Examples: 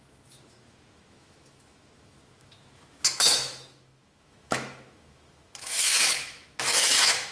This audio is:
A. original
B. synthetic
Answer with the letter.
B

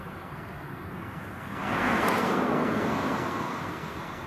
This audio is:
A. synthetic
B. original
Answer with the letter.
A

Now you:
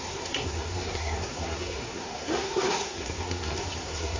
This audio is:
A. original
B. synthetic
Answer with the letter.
B